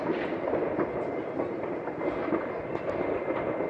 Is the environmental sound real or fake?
real